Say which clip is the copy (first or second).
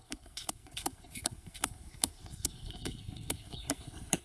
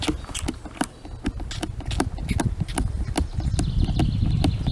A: first